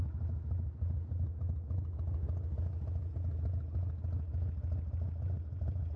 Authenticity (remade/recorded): recorded